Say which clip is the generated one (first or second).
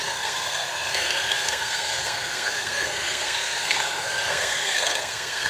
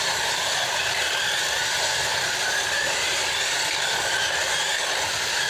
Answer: first